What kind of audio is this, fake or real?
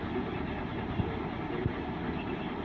real